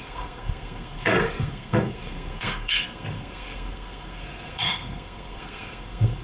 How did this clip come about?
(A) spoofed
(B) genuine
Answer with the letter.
A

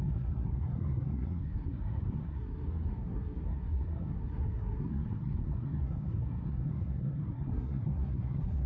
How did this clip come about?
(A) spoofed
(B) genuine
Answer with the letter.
A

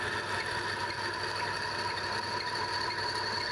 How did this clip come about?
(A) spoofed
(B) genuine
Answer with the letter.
B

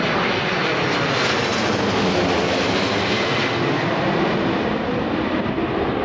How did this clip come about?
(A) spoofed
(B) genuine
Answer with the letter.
B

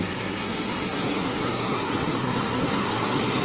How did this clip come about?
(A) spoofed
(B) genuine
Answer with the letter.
A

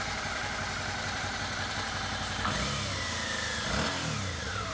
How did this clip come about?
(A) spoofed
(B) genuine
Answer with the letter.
B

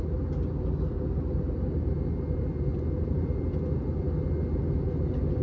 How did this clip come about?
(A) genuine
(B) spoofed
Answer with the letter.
A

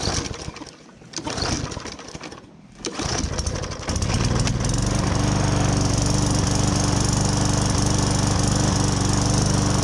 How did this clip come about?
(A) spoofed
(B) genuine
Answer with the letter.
B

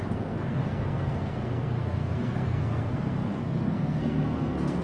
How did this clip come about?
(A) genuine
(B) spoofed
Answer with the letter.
B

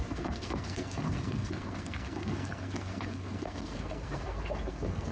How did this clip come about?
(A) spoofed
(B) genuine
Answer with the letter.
A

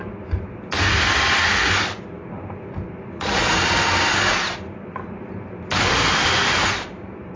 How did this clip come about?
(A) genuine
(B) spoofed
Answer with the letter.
A